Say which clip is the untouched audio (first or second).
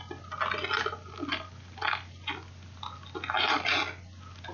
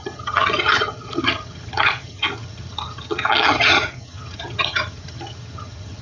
first